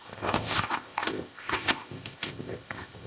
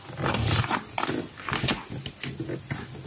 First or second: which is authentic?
second